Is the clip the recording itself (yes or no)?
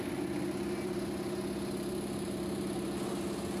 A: yes